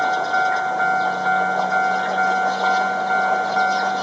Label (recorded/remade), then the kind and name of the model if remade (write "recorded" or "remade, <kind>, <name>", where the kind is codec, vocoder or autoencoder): recorded